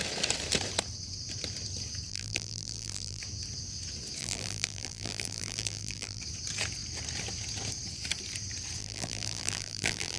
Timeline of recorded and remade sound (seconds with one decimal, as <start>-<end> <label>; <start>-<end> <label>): 0.0-2.1 recorded; 2.1-3.2 remade; 3.2-4.2 recorded; 4.2-6.2 remade; 6.2-8.8 recorded; 8.8-10.2 remade